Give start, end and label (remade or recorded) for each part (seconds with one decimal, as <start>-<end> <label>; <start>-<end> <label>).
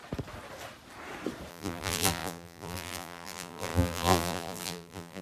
0.0-1.5 recorded; 1.5-5.2 remade